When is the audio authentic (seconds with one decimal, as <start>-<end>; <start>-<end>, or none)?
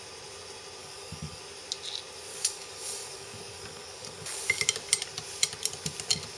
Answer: 0.0-0.8; 1.4-2.3; 4.6-6.4